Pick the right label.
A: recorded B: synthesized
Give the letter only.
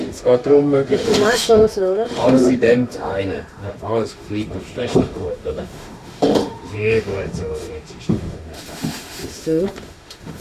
B